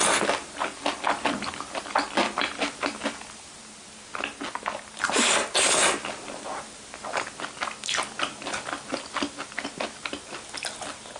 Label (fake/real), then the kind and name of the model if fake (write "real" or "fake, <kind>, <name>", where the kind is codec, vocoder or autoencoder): real